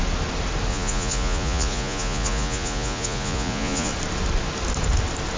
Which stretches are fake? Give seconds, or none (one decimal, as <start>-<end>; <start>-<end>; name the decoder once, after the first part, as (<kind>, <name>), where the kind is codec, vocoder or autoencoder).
0.7-3.9 (vocoder, Vocos)